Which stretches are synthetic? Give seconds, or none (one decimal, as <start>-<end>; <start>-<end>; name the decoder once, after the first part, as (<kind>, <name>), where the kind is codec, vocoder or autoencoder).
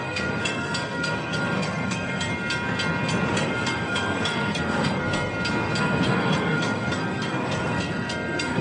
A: 0.0-2.3 (codec, SNAC); 3.3-5.3; 5.8-8.6